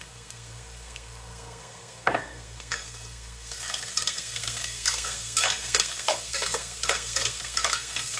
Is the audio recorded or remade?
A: remade